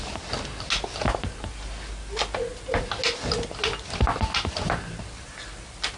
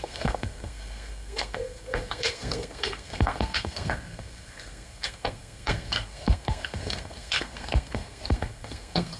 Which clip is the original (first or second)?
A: first